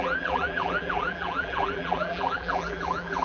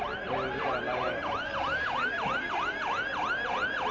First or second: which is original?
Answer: second